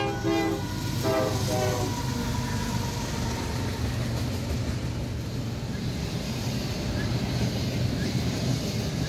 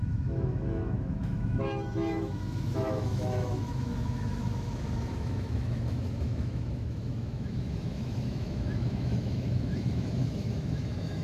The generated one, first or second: second